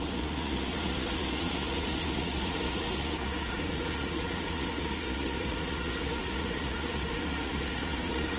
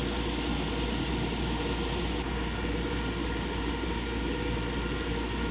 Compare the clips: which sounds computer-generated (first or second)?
first